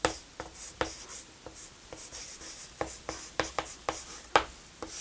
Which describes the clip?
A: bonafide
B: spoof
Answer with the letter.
A